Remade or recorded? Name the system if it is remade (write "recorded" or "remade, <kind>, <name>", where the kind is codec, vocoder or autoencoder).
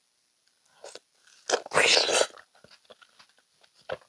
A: recorded